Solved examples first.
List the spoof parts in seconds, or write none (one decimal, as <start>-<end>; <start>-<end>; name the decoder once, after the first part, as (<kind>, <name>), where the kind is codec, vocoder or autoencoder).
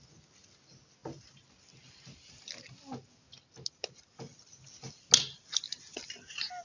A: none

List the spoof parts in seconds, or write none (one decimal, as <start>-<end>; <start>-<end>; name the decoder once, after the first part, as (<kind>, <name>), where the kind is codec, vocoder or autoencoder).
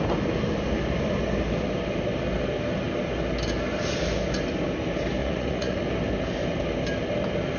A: 5.2-5.8 (vocoder, Vocos)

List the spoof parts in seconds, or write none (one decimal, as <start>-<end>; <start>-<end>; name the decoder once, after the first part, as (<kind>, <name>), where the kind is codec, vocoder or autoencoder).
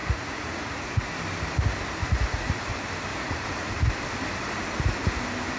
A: 0.0-1.1 (vocoder, Vocos); 2.0-2.7; 3.1-3.7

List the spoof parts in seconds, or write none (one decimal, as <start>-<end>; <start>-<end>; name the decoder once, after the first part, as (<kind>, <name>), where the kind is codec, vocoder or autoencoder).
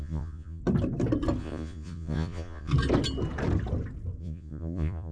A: 0.0-0.6 (vocoder, Vocos); 1.4-2.7; 4.2-5.1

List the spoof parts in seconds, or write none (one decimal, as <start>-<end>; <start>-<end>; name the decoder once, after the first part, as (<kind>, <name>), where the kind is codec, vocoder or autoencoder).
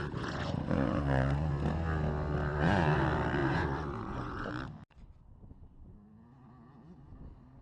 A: 0.0-1.5 (vocoder, Vocos); 2.5-3.0; 3.4-4.5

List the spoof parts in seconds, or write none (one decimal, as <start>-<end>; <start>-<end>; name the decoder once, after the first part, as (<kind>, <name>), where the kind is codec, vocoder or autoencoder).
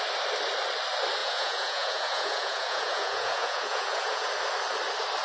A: 1.2-4.3 (vocoder, Vocos)